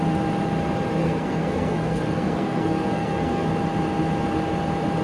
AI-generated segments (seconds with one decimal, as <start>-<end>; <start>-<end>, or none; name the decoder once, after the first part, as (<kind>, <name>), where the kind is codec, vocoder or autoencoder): 1.0-3.5 (codec, SNAC)